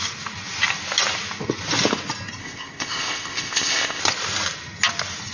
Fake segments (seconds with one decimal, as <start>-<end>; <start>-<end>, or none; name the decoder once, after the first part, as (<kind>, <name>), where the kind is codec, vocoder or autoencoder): 2.4-4.0 (codec, ZipCodec)